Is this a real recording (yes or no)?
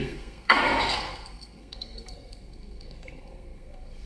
no